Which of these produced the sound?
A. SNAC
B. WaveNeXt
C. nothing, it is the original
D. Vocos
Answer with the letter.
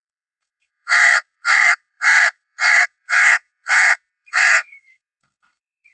A